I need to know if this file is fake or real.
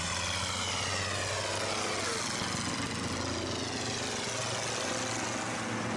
real